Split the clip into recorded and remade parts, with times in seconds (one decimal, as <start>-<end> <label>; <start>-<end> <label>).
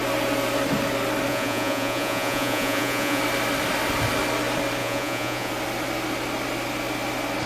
0.0-1.3 recorded; 1.3-3.2 remade; 3.2-4.8 recorded; 4.8-5.5 remade; 5.5-7.5 recorded